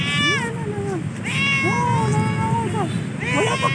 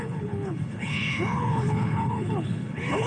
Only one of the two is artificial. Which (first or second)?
second